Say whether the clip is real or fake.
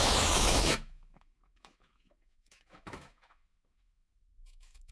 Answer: fake